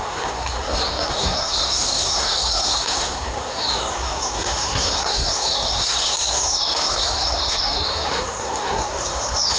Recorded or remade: remade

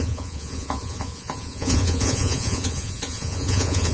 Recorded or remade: remade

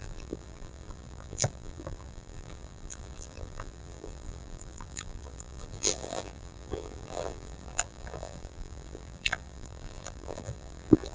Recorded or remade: remade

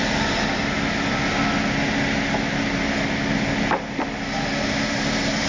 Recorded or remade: recorded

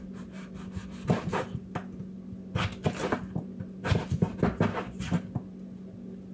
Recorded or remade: recorded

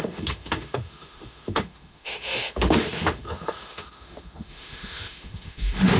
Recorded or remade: remade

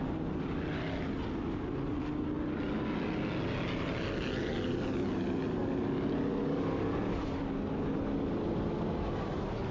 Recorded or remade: recorded